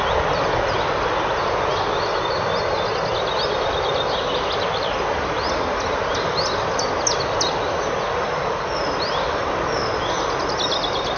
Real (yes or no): yes